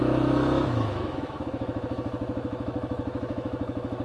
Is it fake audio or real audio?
fake